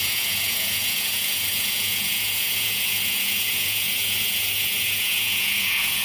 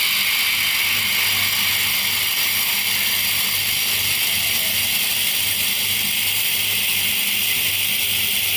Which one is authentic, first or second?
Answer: second